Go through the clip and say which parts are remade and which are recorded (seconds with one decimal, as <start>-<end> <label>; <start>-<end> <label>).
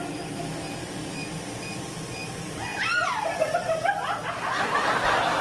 0.0-5.4 remade